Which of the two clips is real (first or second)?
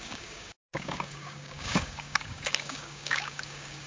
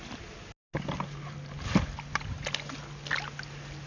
second